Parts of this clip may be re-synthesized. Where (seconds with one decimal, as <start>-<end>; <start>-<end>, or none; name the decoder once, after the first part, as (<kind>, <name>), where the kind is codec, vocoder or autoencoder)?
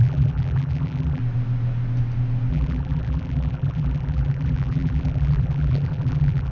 0.0-1.2 (vocoder, BigVGAN v2); 2.5-6.5